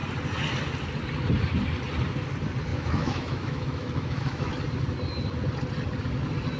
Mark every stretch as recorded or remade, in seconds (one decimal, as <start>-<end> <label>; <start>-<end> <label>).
0.0-2.7 recorded; 2.7-4.5 remade; 4.5-6.6 recorded